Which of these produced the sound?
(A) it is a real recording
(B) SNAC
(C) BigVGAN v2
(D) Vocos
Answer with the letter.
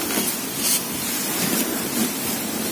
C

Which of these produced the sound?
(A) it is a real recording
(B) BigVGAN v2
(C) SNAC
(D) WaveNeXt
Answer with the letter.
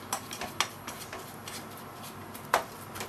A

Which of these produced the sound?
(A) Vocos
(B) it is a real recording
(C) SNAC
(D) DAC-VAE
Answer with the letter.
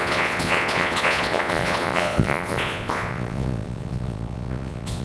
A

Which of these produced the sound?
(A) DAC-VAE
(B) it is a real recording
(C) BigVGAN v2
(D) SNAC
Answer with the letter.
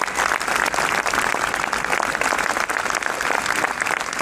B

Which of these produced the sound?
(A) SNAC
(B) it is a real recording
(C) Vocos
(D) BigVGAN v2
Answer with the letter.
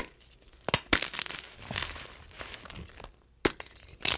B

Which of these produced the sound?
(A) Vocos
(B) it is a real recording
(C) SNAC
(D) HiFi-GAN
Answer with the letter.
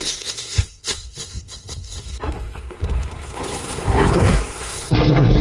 C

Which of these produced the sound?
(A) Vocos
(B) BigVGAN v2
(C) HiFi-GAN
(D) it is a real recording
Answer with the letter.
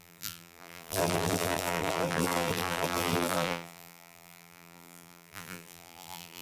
B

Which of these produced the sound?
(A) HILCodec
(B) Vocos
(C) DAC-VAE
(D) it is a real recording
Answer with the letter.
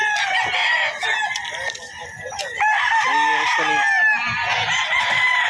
D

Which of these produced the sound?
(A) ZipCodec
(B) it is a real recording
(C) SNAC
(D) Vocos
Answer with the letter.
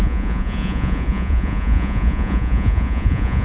D